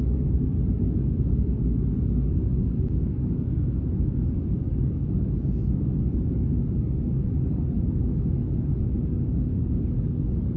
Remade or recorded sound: remade